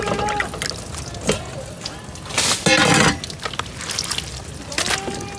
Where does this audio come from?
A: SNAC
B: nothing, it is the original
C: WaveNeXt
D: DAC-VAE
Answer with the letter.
B